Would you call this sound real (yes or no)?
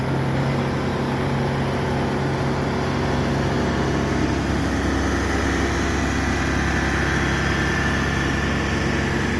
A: yes